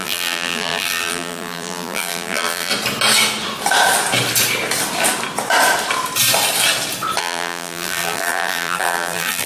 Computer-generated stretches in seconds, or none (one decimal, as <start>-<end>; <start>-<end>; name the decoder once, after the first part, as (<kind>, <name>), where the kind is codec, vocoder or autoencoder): 0.0-2.7 (vocoder, BigVGAN v2); 7.2-9.5